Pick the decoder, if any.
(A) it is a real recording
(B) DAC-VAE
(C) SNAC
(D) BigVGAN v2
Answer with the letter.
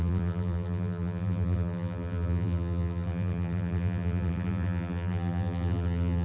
D